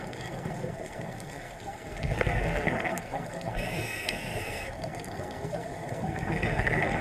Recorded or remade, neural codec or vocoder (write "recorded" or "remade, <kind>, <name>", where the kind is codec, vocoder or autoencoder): remade, codec, SNAC